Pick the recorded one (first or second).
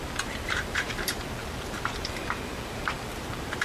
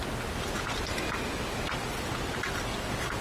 second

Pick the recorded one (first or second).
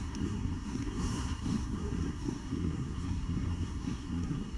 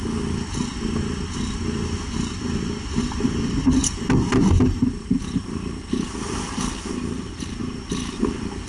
second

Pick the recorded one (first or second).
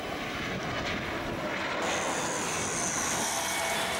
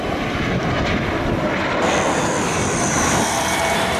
first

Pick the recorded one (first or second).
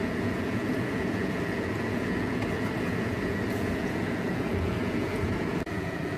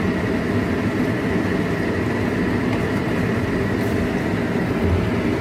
second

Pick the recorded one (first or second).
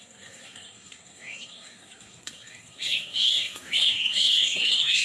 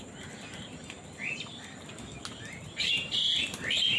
second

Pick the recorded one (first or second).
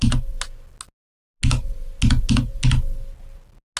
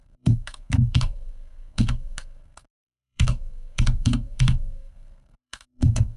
first